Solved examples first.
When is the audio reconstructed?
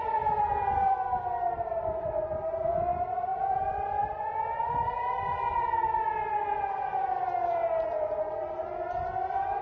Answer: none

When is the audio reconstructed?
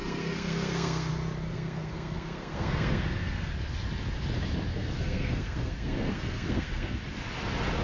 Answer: 0.0-1.1 (codec, SNAC); 1.5-3.5; 4.7-7.0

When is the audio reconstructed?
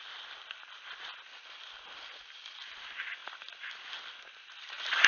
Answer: none